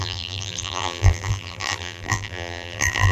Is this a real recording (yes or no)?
no